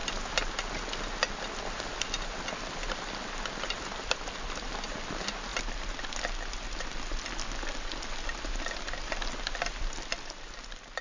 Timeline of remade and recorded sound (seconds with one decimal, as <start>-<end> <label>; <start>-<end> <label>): 0.0-11.0 recorded